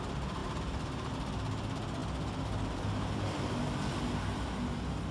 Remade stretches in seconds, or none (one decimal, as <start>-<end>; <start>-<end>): none